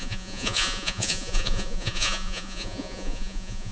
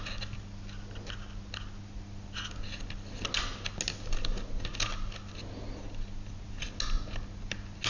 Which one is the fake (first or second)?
first